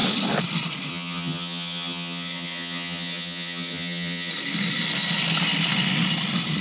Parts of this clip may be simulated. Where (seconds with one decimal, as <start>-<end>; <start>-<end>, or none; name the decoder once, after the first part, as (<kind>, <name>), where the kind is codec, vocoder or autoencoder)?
0.9-4.3 (vocoder, HiFi-GAN)